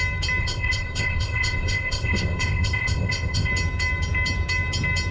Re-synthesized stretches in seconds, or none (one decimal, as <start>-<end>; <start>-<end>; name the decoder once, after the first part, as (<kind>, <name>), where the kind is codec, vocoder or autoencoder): 0.4-3.5 (codec, ZipCodec)